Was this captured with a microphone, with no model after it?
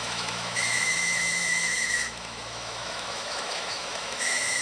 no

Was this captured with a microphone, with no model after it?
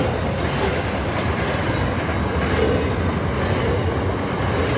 yes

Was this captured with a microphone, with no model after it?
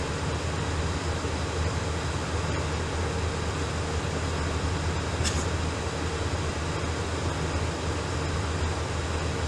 yes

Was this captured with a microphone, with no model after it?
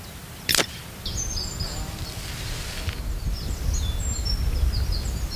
yes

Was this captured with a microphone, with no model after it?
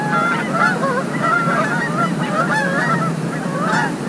yes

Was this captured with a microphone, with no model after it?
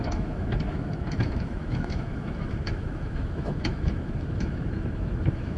no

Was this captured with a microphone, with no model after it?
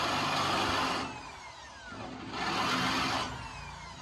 yes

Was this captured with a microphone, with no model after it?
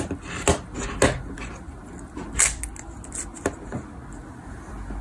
yes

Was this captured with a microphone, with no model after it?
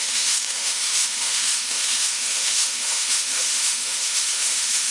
no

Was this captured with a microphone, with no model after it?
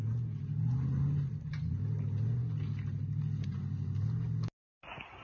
yes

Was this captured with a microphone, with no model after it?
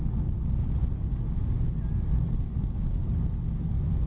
yes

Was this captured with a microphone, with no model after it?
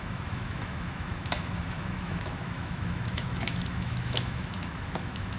no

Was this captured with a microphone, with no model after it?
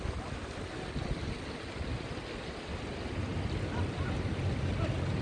yes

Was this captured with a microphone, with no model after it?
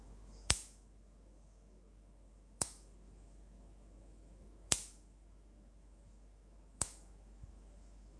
no